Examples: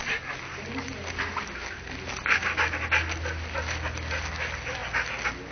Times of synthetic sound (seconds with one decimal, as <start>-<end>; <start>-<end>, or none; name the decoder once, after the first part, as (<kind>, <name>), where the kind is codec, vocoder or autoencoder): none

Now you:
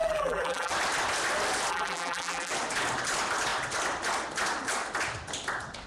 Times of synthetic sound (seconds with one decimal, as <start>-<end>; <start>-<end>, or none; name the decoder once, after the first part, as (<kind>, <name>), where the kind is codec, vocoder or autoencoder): 0.0-0.7 (vocoder, BigVGAN v2); 1.7-2.5

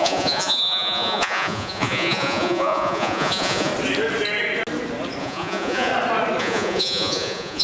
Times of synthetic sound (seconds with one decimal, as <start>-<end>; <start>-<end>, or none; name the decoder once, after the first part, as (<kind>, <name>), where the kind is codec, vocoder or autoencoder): 0.0-3.7 (vocoder, Vocos); 5.2-5.9; 6.4-7.6